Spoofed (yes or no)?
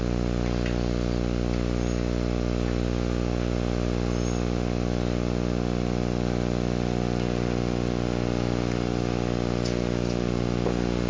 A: no